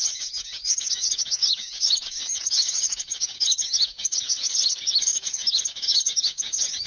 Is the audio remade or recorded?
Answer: remade